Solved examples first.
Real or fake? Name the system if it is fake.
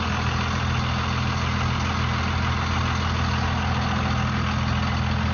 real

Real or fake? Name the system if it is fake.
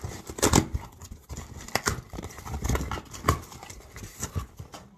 real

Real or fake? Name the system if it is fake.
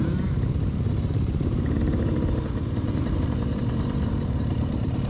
fake, vocoder, BigVGAN v2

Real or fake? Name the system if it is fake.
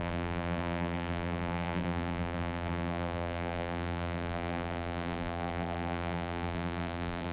fake, vocoder, BigVGAN v2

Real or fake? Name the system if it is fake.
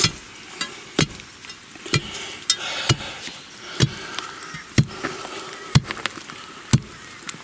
real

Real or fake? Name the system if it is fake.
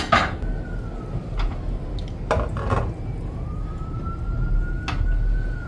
real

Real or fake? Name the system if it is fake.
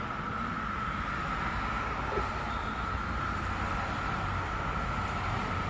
real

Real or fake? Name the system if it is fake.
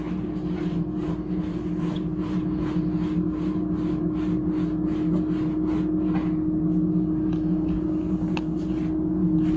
real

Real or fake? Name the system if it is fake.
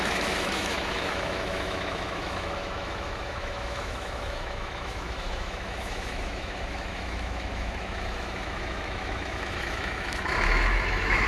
fake, autoencoder, DAC-VAE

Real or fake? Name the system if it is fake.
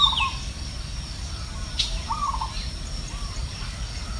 real